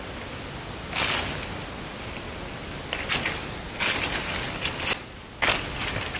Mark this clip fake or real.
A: real